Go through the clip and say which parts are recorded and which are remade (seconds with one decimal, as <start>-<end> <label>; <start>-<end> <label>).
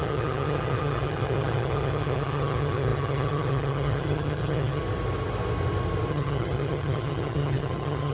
0.0-4.8 remade; 4.8-6.1 recorded; 6.1-8.1 remade